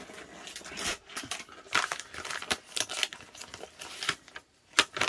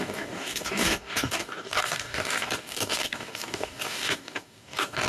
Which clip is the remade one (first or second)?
second